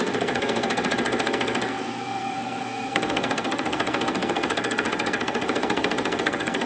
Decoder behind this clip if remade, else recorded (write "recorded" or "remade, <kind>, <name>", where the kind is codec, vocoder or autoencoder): remade, codec, SNAC